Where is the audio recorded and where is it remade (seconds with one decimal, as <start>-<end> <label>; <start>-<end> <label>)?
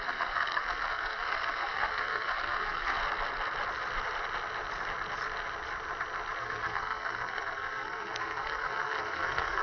0.0-3.0 remade; 3.0-6.4 recorded; 6.4-9.6 remade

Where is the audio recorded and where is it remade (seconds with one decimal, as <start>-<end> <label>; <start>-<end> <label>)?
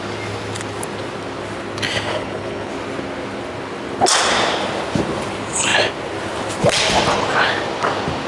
0.0-2.1 recorded; 2.1-2.7 remade; 2.7-8.3 recorded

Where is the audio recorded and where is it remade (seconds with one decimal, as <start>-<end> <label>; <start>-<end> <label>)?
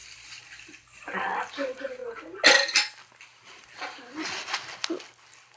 0.0-0.6 recorded; 0.6-2.0 remade; 2.0-5.6 recorded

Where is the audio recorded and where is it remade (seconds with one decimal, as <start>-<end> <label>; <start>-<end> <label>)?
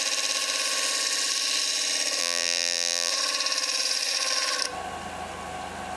0.0-2.2 recorded; 2.2-3.1 remade; 3.1-6.0 recorded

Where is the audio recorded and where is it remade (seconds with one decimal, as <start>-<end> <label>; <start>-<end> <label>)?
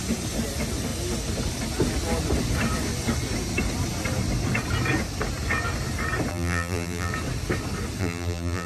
0.0-6.3 recorded; 6.3-7.1 remade; 7.1-8.0 recorded; 8.0-8.7 remade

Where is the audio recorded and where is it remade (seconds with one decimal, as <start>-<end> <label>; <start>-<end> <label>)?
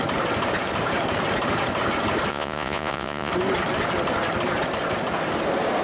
0.0-2.3 recorded; 2.3-3.3 remade; 3.3-5.8 recorded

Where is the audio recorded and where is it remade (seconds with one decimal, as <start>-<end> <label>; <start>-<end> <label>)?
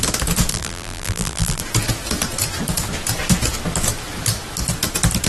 0.0-0.5 recorded; 0.5-1.6 remade; 1.6-5.3 recorded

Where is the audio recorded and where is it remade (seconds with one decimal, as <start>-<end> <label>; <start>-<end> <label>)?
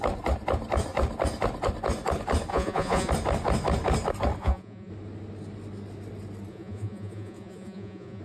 0.0-2.5 recorded; 2.5-3.1 remade; 3.1-4.4 recorded; 4.4-4.9 remade; 4.9-6.5 recorded; 6.5-8.2 remade